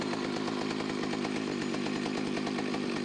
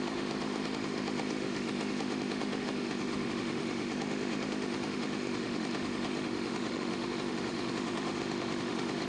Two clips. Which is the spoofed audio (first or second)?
second